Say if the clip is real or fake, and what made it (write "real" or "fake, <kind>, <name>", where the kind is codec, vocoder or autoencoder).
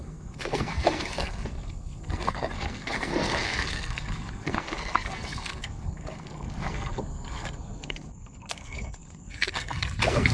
fake, codec, SNAC